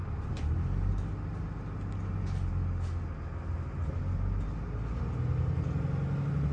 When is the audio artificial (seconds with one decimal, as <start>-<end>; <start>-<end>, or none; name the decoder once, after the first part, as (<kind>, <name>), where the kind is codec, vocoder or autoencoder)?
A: none